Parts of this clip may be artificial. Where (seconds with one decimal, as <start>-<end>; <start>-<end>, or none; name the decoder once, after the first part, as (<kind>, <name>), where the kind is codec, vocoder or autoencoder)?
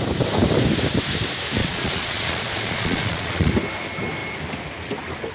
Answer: 1.6-3.5 (vocoder, Vocos)